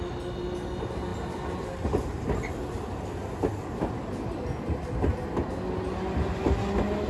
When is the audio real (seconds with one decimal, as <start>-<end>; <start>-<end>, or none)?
0.0-7.1